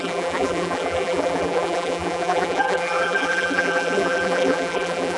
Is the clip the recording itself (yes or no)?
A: no